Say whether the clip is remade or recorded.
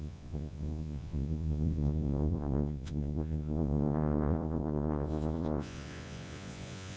remade